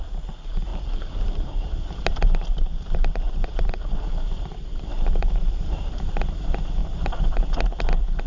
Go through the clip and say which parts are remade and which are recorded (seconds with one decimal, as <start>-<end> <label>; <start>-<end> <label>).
0.0-0.7 recorded; 0.7-5.7 remade; 5.7-6.8 recorded; 6.8-7.5 remade; 7.5-8.3 recorded